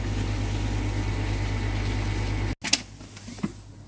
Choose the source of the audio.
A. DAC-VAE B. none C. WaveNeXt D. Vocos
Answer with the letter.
B